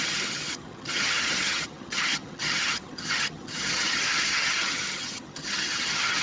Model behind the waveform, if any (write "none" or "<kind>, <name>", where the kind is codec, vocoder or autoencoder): vocoder, HiFi-GAN